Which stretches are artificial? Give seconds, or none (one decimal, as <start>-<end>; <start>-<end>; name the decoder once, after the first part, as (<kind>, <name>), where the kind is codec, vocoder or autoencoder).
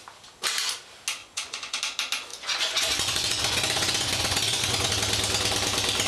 1.2-1.8 (vocoder, Vocos); 2.3-4.9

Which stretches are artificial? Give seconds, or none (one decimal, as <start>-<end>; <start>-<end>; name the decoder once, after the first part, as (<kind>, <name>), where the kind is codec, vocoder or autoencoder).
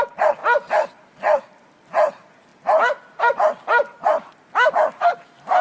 none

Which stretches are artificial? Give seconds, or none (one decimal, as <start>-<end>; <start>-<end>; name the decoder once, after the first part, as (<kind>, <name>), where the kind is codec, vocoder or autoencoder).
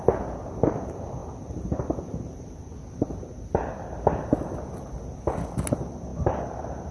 none